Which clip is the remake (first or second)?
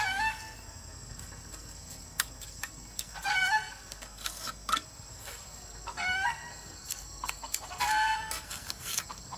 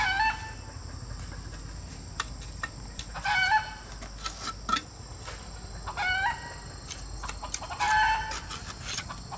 first